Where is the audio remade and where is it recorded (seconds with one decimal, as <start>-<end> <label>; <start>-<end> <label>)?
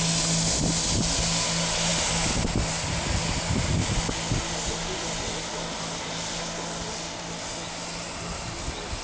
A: 0.0-9.0 recorded